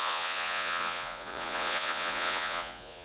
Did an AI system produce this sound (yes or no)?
yes